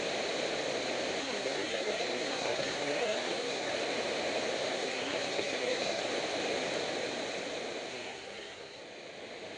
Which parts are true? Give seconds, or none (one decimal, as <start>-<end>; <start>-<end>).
0.0-1.2; 3.7-4.7; 6.0-7.9; 8.8-9.6